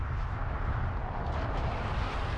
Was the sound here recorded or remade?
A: recorded